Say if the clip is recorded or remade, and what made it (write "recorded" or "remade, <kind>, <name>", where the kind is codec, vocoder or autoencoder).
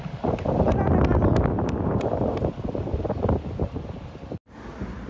recorded